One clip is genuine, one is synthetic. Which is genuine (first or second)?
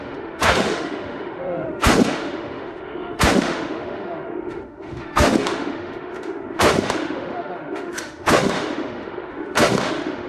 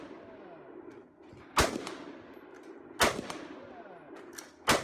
second